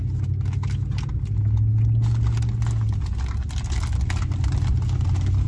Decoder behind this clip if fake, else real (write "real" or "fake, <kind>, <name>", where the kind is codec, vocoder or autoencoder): real